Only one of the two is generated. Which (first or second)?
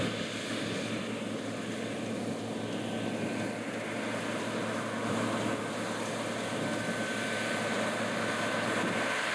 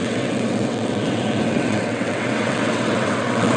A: second